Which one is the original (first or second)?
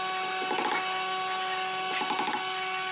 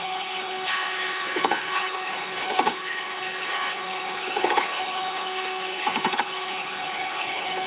first